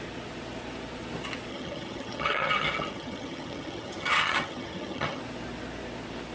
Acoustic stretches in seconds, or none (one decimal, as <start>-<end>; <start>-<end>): 0.0-1.5; 5.2-6.3